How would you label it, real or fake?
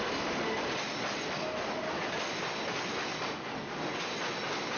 real